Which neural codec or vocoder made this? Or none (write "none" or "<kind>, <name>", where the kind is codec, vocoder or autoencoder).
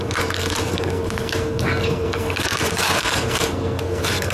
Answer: codec, SNAC